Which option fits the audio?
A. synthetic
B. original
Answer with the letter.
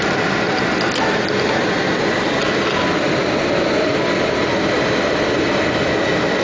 B